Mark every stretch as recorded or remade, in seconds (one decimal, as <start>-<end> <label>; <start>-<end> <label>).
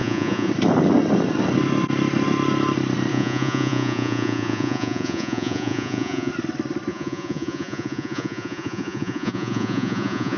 0.0-0.5 remade; 0.5-3.1 recorded; 3.1-6.3 remade; 6.3-6.9 recorded; 6.9-10.4 remade